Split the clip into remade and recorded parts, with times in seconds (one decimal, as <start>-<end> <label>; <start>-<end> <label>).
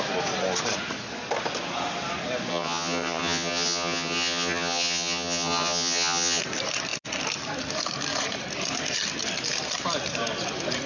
0.0-2.5 recorded; 2.5-6.4 remade; 6.4-10.9 recorded